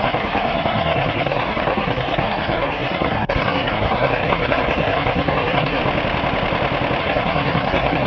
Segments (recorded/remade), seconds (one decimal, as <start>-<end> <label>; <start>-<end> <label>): 0.0-5.8 remade; 5.8-7.0 recorded; 7.0-8.1 remade